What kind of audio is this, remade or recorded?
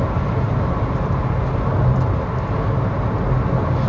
recorded